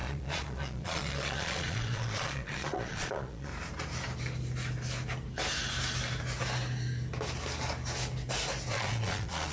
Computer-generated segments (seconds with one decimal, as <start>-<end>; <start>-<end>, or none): 0.0-3.5; 8.7-9.5